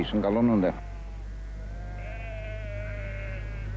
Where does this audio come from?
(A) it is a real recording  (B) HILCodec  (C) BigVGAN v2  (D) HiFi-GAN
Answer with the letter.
A